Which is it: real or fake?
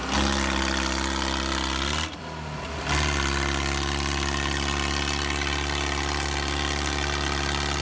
real